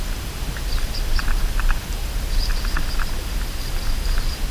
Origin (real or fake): real